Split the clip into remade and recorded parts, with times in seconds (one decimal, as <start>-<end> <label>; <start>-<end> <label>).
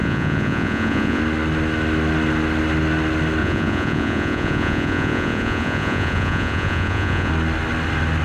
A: 0.0-1.2 remade; 1.2-3.4 recorded; 3.4-7.3 remade; 7.3-8.2 recorded